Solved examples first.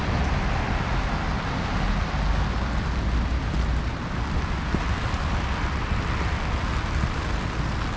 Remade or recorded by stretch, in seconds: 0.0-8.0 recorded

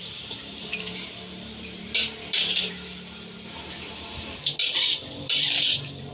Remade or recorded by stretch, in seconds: 0.0-2.7 remade; 2.7-4.6 recorded; 4.6-6.1 remade

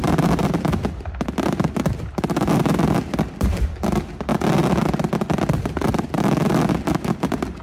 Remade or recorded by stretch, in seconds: 0.0-0.4 recorded; 0.4-2.2 remade; 2.2-5.9 recorded; 5.9-7.1 remade; 7.1-7.6 recorded